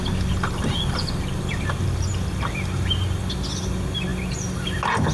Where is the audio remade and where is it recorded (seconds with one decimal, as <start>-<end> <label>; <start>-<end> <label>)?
0.0-5.1 recorded